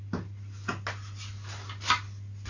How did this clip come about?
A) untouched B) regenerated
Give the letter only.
A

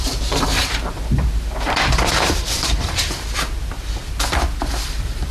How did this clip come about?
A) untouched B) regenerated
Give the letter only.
B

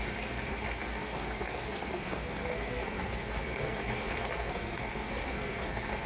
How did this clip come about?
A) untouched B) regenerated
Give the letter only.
B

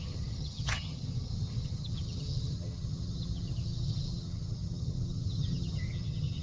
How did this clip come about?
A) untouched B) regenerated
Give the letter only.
B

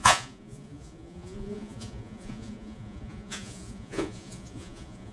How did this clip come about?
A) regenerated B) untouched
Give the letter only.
A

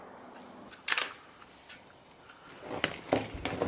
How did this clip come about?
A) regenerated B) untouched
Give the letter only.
B